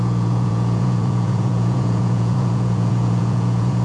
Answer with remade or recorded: remade